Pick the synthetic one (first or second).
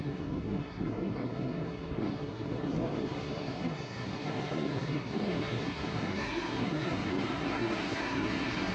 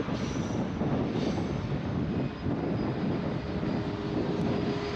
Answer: first